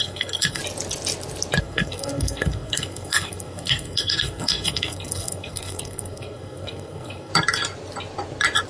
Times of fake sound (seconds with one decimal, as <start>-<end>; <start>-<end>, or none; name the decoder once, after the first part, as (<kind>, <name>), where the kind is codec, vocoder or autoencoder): 0.0-0.6 (codec, SNAC); 1.6-7.3